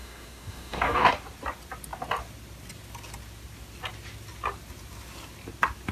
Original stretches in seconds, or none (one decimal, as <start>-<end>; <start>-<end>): 1.1-5.9